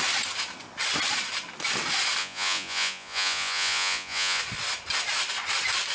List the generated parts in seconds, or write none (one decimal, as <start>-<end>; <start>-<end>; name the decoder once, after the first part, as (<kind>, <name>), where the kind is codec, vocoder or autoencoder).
2.2-4.4 (vocoder, Vocos)